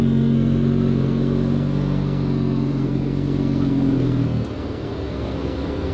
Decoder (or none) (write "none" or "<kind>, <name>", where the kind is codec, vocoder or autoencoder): codec, SNAC